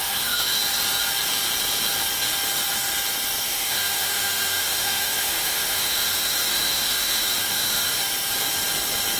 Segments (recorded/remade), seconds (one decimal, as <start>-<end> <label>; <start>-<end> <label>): 0.0-0.6 remade; 0.6-3.5 recorded; 3.5-8.0 remade; 8.0-9.2 recorded